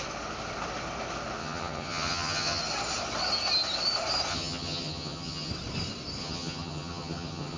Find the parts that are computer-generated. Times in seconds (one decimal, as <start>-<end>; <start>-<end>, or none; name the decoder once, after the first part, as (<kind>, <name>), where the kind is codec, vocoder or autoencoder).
1.4-2.6 (vocoder, HiFi-GAN); 4.3-5.5; 6.2-7.6